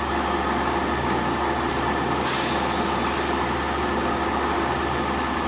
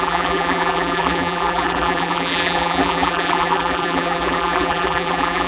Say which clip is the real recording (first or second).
first